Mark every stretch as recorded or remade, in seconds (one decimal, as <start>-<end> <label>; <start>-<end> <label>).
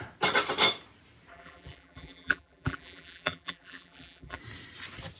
0.0-1.3 recorded; 1.3-4.4 remade; 4.4-5.2 recorded